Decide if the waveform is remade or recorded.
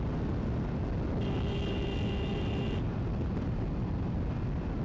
recorded